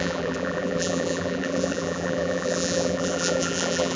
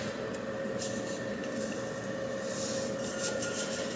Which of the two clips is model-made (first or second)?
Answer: first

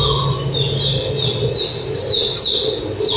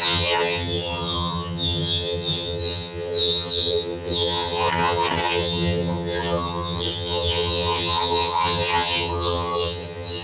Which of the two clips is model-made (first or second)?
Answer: second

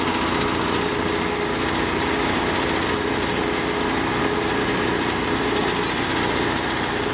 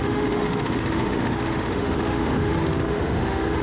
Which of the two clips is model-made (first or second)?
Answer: second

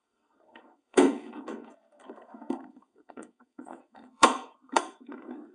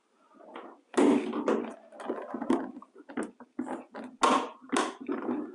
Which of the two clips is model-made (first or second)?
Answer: first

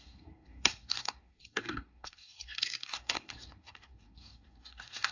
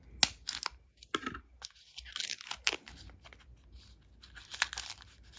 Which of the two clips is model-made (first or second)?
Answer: first